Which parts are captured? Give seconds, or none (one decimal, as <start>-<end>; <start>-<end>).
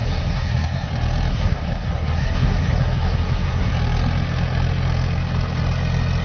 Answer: 0.9-1.3; 3.7-6.2